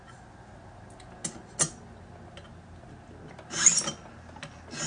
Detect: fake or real real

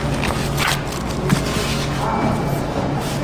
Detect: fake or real real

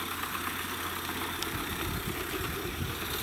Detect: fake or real real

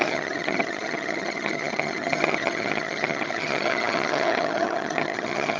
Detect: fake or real fake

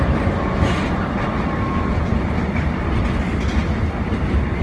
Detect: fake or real real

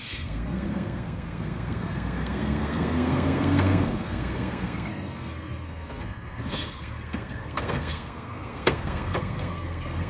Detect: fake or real fake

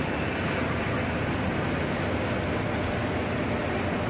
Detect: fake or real real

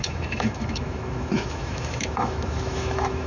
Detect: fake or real fake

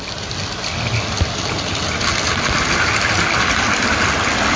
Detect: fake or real real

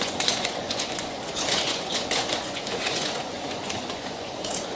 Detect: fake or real fake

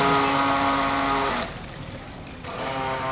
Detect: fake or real real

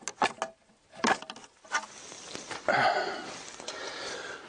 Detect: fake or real real